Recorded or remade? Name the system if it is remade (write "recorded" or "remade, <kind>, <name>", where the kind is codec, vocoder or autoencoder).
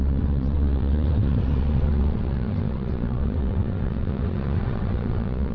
remade, vocoder, WaveNeXt